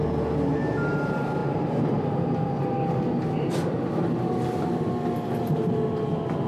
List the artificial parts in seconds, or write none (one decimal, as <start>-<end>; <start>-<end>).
none